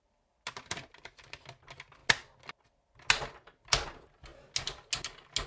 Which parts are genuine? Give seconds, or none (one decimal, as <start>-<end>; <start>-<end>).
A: 0.0-5.5